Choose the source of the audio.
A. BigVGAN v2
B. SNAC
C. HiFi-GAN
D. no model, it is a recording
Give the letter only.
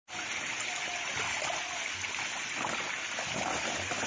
D